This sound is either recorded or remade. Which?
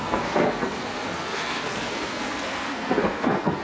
remade